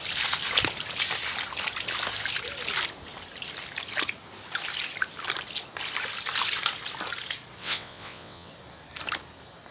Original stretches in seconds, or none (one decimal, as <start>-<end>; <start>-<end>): 0.0-7.6; 8.5-9.7